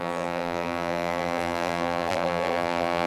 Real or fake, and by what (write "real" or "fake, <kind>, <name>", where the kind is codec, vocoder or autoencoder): fake, vocoder, BigVGAN v2